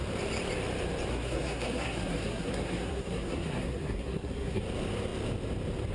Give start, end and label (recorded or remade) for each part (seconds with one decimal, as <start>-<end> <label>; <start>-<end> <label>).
0.0-1.1 recorded; 1.1-4.6 remade; 4.6-5.9 recorded